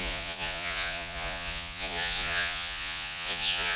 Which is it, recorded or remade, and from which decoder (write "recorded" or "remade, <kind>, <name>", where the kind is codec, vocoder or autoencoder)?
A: remade, vocoder, Vocos